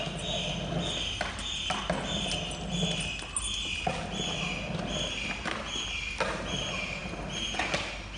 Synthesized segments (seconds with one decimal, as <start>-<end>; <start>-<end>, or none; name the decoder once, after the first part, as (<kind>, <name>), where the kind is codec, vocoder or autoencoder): none

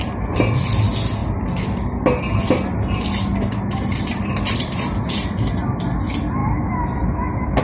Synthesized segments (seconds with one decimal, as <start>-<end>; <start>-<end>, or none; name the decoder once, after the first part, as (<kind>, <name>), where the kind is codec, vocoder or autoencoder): none

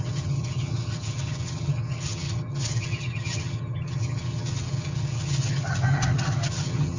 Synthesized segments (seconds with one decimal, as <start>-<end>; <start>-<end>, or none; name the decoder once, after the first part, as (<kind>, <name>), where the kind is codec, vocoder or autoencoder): 0.0-7.0 (vocoder, HiFi-GAN)

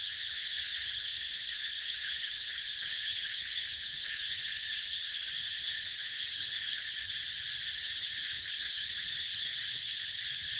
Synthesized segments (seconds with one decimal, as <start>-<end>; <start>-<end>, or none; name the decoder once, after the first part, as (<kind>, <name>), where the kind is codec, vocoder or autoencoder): 0.0-7.1 (codec, HILCodec); 8.0-10.6

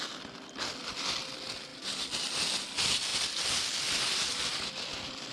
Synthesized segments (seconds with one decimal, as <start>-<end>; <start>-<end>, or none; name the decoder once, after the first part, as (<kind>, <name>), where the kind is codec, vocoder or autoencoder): none